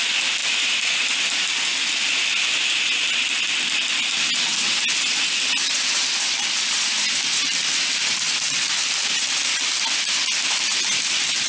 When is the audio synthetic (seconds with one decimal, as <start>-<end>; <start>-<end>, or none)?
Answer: none